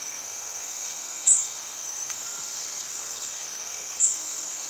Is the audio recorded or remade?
remade